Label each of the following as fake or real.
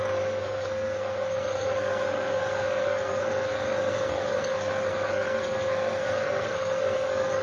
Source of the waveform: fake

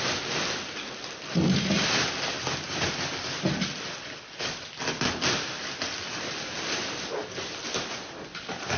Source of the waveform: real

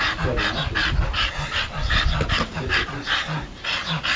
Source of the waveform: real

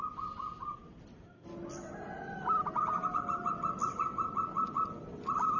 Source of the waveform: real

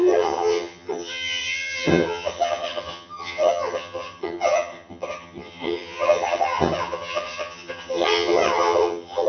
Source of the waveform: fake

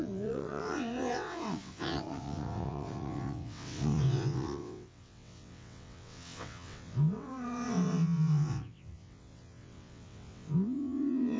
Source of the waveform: fake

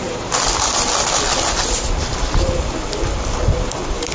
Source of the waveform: real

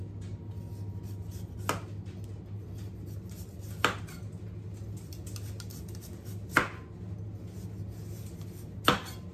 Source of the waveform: real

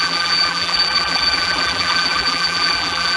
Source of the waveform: fake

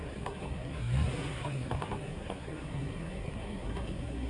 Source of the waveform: fake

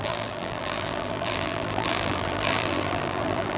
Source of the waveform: fake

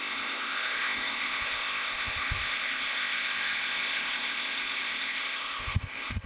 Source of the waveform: fake